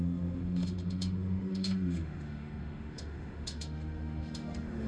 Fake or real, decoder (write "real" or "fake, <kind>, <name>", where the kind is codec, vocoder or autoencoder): fake, autoencoder, DAC-VAE